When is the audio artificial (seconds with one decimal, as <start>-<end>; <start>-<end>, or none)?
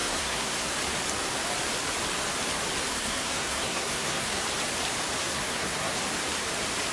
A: 0.0-0.8; 2.9-4.4; 5.2-5.9